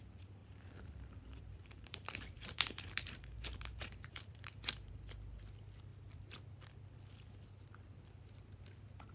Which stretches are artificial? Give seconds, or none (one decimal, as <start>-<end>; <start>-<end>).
0.4-4.9